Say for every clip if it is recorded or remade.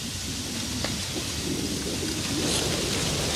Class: recorded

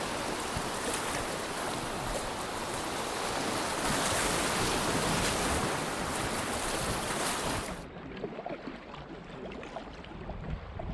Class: recorded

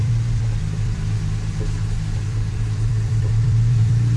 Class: remade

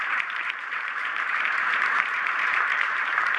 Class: remade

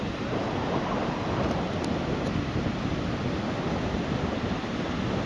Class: recorded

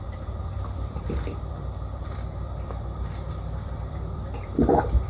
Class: remade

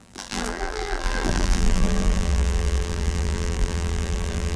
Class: remade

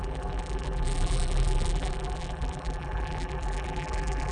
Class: remade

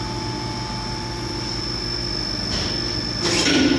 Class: recorded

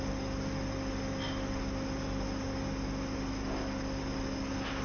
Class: recorded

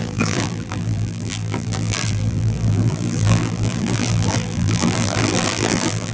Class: remade